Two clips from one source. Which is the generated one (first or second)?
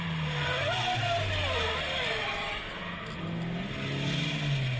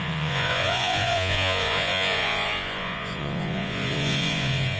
second